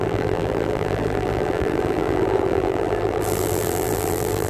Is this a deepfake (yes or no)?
yes